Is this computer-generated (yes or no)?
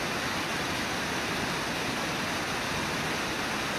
no